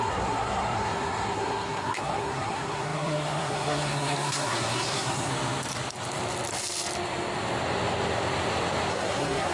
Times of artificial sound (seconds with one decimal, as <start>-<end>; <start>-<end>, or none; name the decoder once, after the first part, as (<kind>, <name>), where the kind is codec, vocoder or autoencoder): 0.0-5.3 (codec, SNAC); 8.9-9.5